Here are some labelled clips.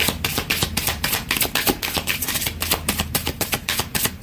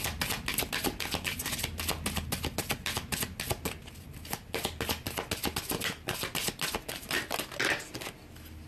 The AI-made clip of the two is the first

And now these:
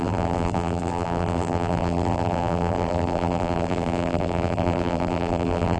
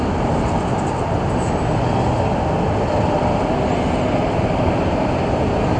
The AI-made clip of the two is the first